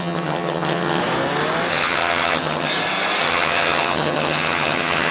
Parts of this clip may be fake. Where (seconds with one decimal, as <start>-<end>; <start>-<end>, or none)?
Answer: 0.0-1.0; 1.7-2.7; 3.2-5.1